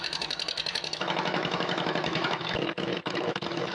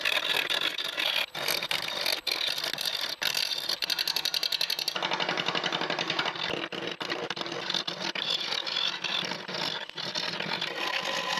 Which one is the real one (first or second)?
second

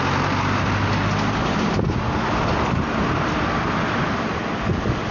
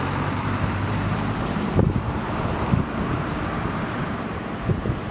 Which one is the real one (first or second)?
first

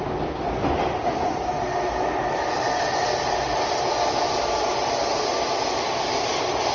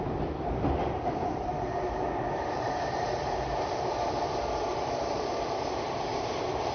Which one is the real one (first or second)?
first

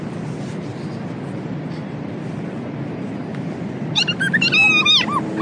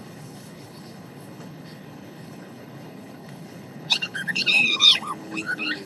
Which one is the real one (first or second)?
first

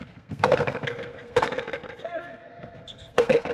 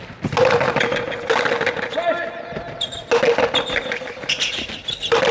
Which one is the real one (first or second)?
second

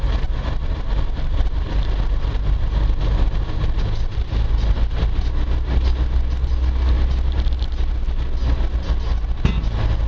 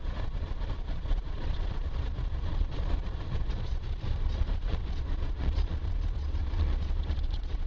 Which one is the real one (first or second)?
first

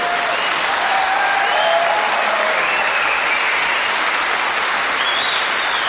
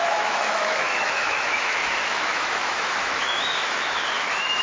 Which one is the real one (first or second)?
first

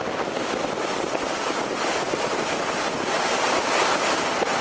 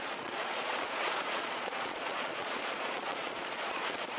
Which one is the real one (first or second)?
first